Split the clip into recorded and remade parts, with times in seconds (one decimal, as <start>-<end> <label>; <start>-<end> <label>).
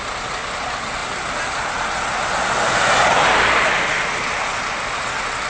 0.0-5.5 recorded